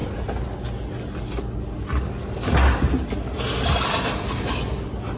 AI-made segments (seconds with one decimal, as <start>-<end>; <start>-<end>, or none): none